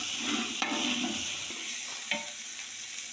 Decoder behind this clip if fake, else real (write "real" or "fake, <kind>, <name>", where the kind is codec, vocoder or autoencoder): real